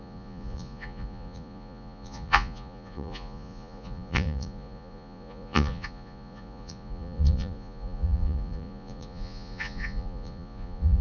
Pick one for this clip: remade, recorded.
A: remade